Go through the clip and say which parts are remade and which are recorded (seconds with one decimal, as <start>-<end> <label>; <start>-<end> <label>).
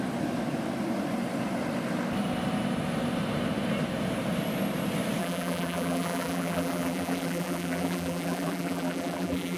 0.0-5.2 recorded; 5.2-9.6 remade